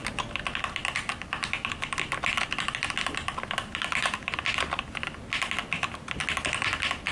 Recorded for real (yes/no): yes